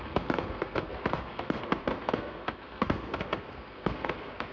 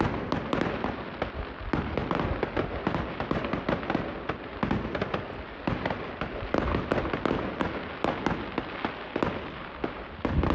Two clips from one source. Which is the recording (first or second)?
second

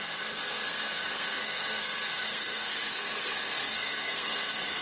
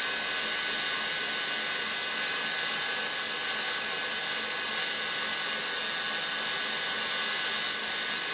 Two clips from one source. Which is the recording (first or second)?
second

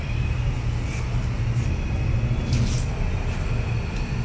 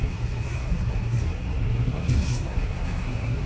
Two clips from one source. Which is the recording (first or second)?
first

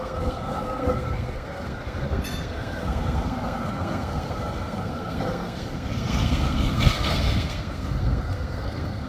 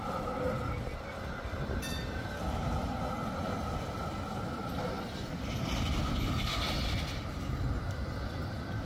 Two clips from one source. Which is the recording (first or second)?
second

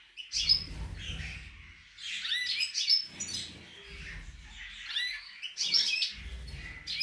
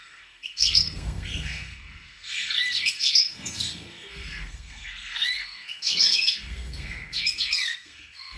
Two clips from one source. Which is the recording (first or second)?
first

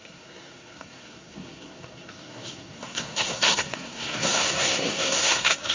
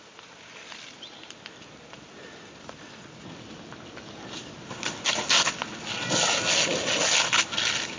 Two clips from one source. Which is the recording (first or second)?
second